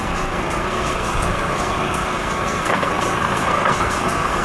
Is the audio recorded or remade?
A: remade